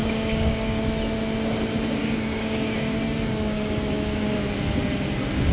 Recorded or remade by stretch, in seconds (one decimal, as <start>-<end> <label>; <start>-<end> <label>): 0.0-0.8 remade; 0.8-2.0 recorded; 2.0-4.4 remade; 4.4-5.5 recorded